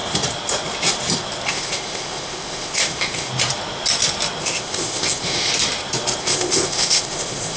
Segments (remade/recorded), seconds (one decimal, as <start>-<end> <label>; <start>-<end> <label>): 0.0-1.5 recorded; 1.5-3.3 remade; 3.3-4.4 recorded; 4.4-5.5 remade; 5.5-6.2 recorded; 6.2-7.6 remade

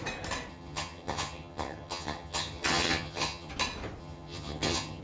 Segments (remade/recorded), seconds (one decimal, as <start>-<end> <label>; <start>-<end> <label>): 0.0-0.5 recorded; 0.5-3.5 remade; 3.5-4.0 recorded; 4.0-5.0 remade